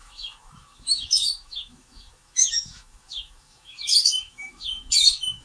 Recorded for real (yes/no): no